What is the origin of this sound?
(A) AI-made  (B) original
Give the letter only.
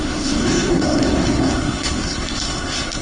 A